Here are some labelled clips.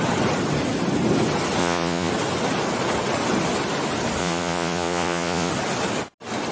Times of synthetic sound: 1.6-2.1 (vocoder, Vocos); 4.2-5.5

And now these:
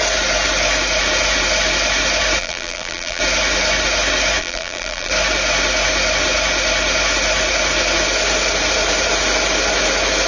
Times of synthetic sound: 2.4-3.2 (vocoder, BigVGAN v2); 4.4-5.1

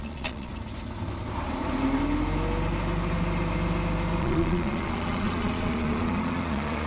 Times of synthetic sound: 0.0-0.5 (vocoder, Vocos); 4.2-6.9

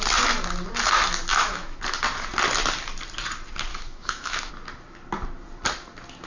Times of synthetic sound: 1.3-1.8 (autoencoder, DAC-VAE); 3.7-4.5

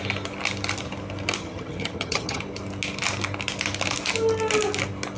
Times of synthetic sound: 1.4-2.4 (vocoder, HiFi-GAN)

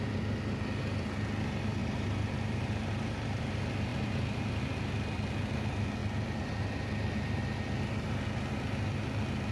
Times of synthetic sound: 1.8-3.4 (vocoder, BigVGAN v2); 3.9-4.6

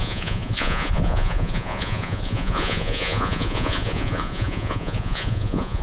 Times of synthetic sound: 0.0-5.8 (vocoder, Vocos)